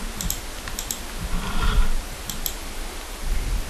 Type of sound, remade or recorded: recorded